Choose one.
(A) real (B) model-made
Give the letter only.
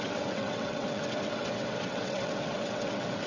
B